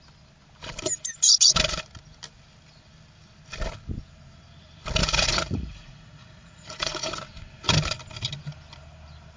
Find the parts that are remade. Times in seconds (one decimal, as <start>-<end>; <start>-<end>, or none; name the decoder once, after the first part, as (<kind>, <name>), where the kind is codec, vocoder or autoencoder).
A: 5.0-7.1 (vocoder, Vocos)